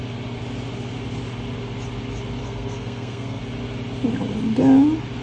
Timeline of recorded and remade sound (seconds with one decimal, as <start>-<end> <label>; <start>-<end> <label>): 0.0-2.4 recorded; 2.4-3.4 remade; 3.4-5.2 recorded